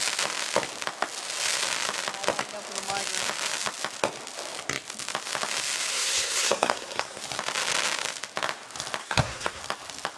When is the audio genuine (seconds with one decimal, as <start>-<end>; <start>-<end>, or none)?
0.0-5.9; 7.2-9.0; 9.6-10.2